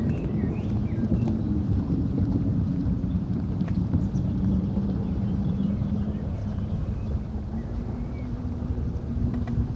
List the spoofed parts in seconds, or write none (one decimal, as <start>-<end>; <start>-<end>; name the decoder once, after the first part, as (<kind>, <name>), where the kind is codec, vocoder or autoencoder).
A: 0.0-6.4 (vocoder, BigVGAN v2); 8.5-9.8